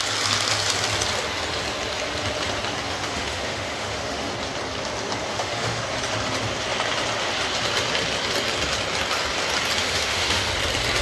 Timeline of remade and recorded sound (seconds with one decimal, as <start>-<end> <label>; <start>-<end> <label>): 0.0-2.9 recorded; 2.9-4.3 remade; 4.3-5.3 recorded; 5.3-5.8 remade; 5.8-9.8 recorded; 9.8-10.5 remade; 10.5-11.0 recorded